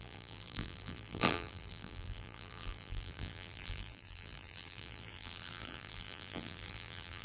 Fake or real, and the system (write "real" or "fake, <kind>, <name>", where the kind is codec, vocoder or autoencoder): fake, vocoder, BigVGAN v2